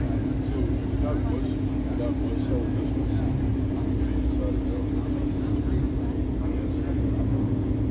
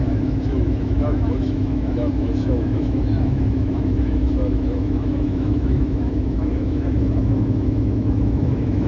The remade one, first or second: second